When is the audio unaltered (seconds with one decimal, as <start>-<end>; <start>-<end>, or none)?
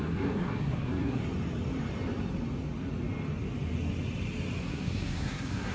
1.2-4.6